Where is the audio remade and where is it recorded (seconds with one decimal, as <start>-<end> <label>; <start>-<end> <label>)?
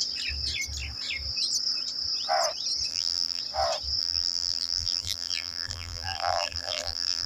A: 0.0-2.9 recorded; 2.9-3.4 remade; 3.4-4.0 recorded; 4.0-7.3 remade